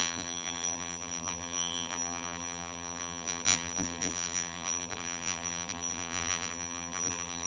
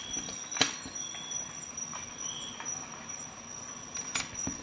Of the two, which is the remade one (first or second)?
first